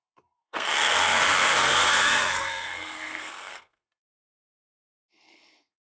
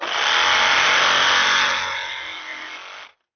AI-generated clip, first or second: first